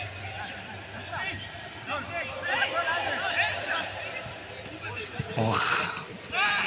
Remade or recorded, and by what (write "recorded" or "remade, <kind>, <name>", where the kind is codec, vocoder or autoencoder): recorded